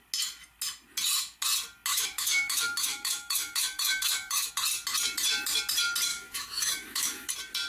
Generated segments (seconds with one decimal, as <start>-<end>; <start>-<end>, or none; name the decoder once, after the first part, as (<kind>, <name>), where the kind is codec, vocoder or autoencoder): 1.9-4.5 (autoencoder, DAC-VAE); 6.1-7.3